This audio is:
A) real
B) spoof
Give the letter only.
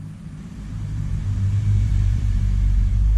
B